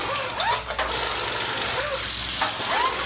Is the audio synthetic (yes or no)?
no